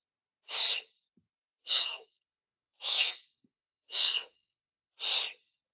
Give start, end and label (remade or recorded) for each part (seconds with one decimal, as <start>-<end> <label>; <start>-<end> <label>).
0.0-1.6 recorded; 1.6-5.0 remade; 5.0-5.7 recorded